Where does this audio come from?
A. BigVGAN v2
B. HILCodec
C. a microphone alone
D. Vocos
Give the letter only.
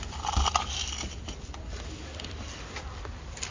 C